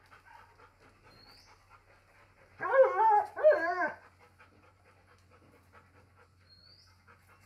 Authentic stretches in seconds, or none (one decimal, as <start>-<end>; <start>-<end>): 0.0-7.5